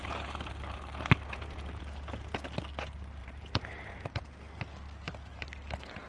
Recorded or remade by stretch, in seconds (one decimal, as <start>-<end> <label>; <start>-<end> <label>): 0.0-1.8 remade; 1.8-3.2 recorded; 3.2-4.2 remade; 4.2-6.1 recorded